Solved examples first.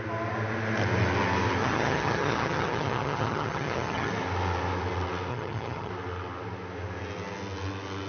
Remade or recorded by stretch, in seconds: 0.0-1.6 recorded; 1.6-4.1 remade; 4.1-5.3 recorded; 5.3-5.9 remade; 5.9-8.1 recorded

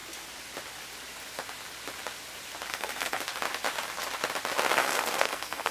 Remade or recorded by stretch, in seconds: 0.0-2.7 recorded; 2.7-3.2 remade; 3.2-4.8 recorded; 4.8-5.7 remade

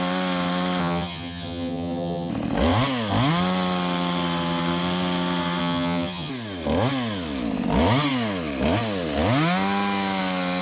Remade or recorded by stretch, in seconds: 0.0-0.8 recorded; 0.8-2.3 remade; 2.3-5.6 recorded; 5.6-6.3 remade; 6.3-10.6 recorded